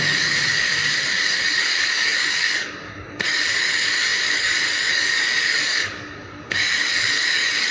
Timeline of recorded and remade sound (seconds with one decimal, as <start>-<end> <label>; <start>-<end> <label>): 0.0-7.7 remade